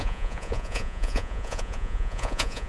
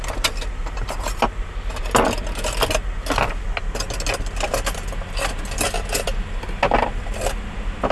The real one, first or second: second